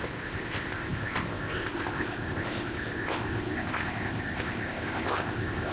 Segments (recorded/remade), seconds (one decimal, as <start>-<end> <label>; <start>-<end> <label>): 0.0-5.7 remade